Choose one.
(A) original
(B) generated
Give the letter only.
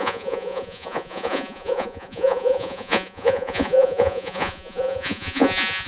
B